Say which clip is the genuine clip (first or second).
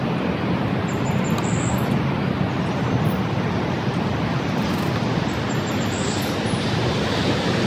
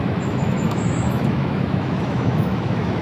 first